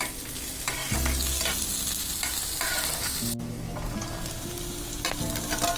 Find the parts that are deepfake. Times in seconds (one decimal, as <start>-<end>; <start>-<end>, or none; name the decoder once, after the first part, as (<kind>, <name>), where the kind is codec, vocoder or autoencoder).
none